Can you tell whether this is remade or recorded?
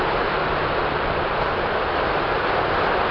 recorded